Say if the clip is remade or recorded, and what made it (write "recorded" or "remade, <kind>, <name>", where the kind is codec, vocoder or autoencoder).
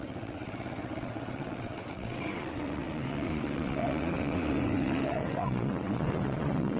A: remade, vocoder, WaveNeXt